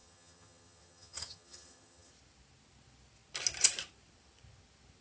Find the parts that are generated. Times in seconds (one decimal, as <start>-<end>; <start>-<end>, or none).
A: 0.0-2.1